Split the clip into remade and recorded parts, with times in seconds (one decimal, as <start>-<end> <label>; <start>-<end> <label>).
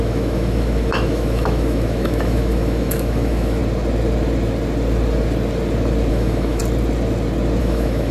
0.0-3.6 remade; 3.6-6.1 recorded; 6.1-6.6 remade; 6.6-7.6 recorded; 7.6-8.1 remade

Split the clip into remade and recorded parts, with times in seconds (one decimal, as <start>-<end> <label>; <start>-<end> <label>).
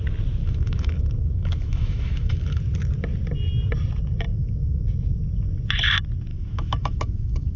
0.0-0.4 recorded; 0.4-2.6 remade; 2.6-4.3 recorded; 4.3-4.8 remade; 4.8-6.3 recorded; 6.3-7.6 remade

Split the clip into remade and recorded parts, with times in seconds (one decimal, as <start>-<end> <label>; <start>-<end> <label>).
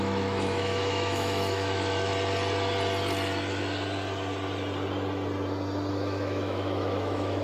0.0-2.1 remade; 2.1-5.9 recorded; 5.9-7.4 remade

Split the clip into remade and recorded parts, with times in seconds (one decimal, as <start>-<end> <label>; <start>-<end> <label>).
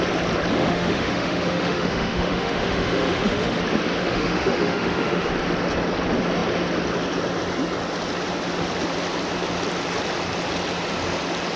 0.0-0.5 recorded; 0.5-3.6 remade; 3.6-4.0 recorded; 4.0-5.3 remade; 5.3-11.6 recorded